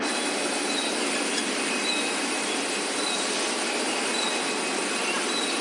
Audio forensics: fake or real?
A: fake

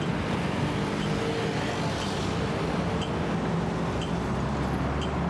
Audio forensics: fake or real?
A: real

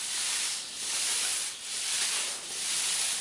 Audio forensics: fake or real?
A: fake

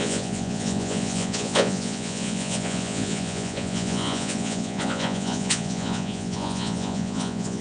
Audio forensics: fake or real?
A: fake